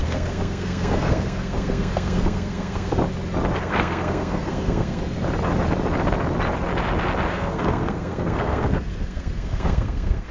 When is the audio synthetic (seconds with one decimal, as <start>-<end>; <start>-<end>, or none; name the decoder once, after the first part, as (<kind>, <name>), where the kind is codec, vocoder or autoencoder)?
0.0-3.0 (codec, SNAC); 3.6-5.0; 7.3-10.3